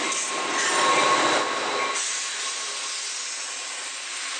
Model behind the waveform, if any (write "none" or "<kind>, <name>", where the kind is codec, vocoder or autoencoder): none